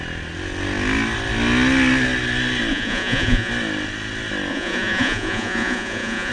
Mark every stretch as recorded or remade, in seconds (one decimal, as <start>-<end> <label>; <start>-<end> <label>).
0.0-2.7 recorded; 2.7-3.5 remade; 3.5-4.5 recorded; 4.5-6.3 remade